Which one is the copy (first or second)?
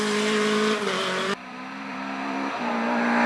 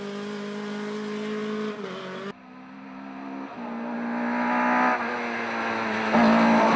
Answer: first